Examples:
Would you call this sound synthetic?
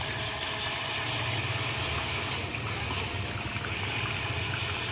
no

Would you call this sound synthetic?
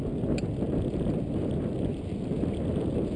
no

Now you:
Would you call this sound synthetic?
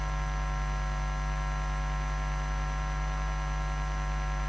no